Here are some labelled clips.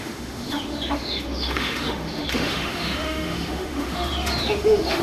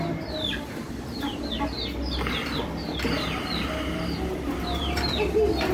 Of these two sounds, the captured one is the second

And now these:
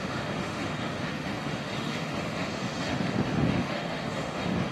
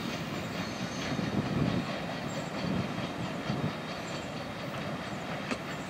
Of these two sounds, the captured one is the second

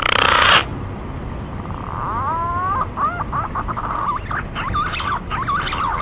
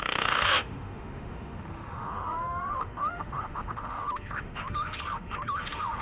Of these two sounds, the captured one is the first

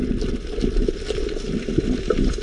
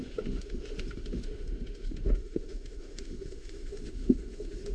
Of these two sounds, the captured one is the first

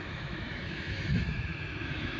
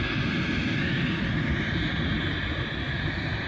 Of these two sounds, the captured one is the second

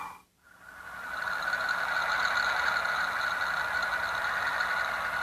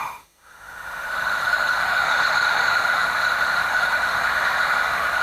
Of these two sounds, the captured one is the first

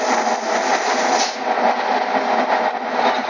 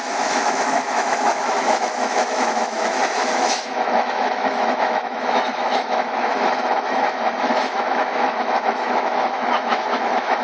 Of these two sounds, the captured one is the first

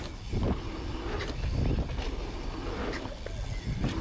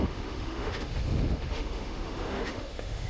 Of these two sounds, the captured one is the first